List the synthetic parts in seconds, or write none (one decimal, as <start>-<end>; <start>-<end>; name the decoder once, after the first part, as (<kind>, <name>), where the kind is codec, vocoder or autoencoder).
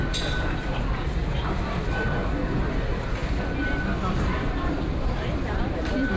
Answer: 0.0-2.2 (vocoder, BigVGAN v2); 2.8-3.2; 4.1-6.2